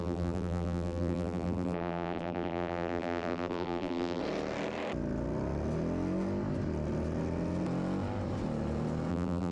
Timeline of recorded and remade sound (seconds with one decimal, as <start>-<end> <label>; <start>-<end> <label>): 0.0-4.2 remade; 4.2-9.1 recorded; 9.1-9.5 remade